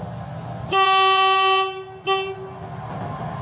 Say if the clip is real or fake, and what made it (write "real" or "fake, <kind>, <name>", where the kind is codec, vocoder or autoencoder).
real